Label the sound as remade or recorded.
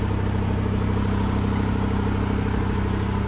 recorded